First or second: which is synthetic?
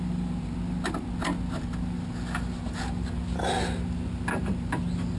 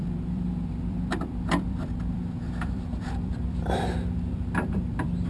second